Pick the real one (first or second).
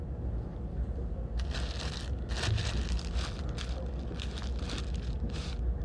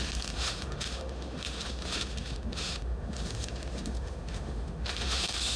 first